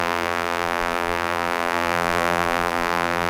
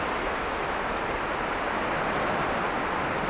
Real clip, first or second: second